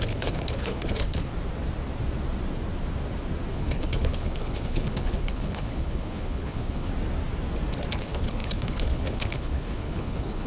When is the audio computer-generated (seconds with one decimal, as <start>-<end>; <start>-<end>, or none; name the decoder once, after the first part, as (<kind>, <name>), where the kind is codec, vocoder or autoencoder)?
0.0-1.3 (codec, HILCodec); 3.5-6.9; 8.0-10.5